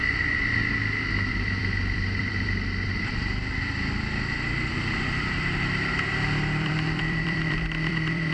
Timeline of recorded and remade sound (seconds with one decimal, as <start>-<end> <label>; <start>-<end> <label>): 0.0-1.3 recorded; 1.3-8.3 remade